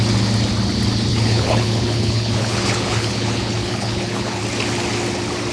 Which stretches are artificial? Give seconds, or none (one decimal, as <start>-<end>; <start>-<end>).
1.1-4.4